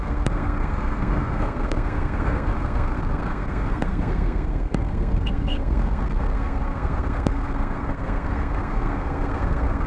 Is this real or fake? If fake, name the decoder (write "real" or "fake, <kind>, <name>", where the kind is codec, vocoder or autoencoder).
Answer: fake, codec, SNAC